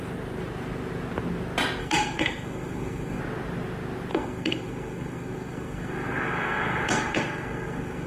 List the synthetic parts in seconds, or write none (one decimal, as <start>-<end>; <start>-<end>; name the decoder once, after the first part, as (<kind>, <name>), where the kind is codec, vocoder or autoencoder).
1.8-3.2 (codec, SNAC); 4.1-8.1